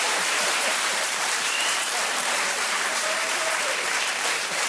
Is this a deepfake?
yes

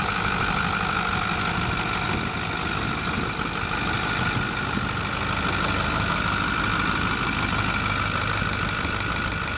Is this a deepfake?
no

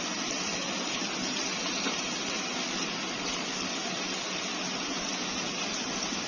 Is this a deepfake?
no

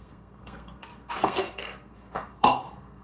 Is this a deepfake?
yes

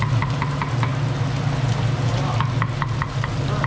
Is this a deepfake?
no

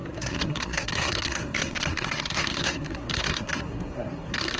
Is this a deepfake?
yes